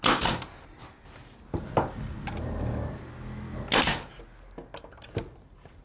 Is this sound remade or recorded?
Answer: recorded